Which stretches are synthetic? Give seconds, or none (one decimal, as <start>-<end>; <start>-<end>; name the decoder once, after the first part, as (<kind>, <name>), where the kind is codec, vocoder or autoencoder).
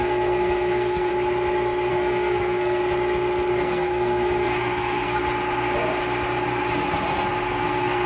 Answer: 0.0-1.1 (codec, SNAC); 1.9-2.8; 3.5-5.2; 7.5-8.1